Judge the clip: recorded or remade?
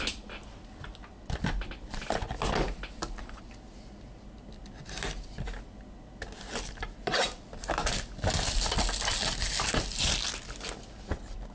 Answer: recorded